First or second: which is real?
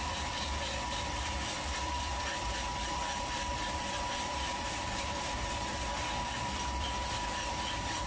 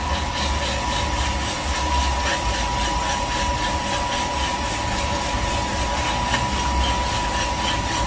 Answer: second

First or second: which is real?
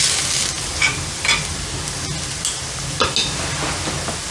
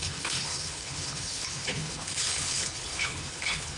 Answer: first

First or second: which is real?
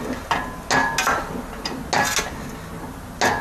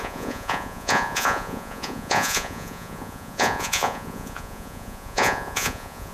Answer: first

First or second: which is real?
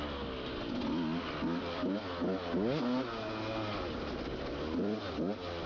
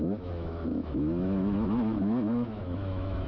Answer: first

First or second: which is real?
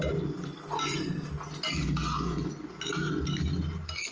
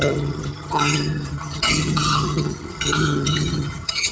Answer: first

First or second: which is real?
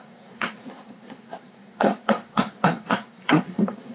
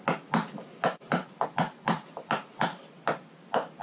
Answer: second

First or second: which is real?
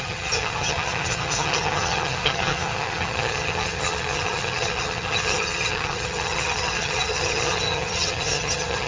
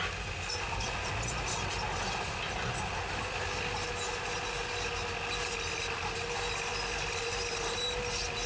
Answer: second